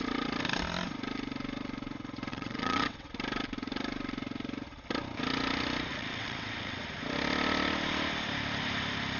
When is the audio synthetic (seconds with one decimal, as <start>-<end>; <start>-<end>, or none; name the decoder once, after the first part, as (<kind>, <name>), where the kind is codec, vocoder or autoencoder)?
2.3-3.1 (vocoder, WaveNeXt); 5.9-6.8